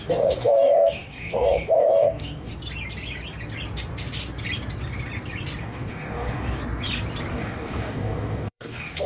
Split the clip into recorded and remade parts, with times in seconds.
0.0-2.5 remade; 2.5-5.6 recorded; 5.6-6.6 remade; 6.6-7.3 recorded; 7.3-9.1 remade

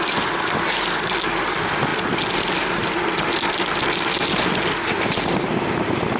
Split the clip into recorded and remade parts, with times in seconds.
0.0-6.2 recorded

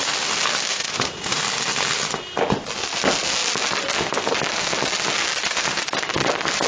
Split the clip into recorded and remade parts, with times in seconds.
0.0-0.7 recorded; 0.7-1.4 remade; 1.4-6.7 recorded

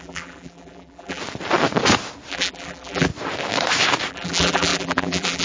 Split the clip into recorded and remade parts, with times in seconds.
0.0-1.2 remade; 1.2-2.3 recorded; 2.3-3.1 remade; 3.1-4.1 recorded; 4.1-5.4 remade

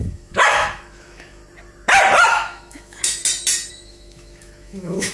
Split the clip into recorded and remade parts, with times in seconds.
0.0-1.4 remade; 1.4-2.3 recorded; 2.3-3.2 remade; 3.2-3.7 recorded; 3.7-5.1 remade